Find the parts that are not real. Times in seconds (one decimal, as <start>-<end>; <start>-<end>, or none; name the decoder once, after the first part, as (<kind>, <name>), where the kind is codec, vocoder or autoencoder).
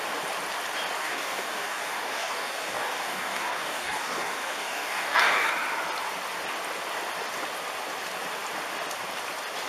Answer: 1.0-5.5 (codec, DAC)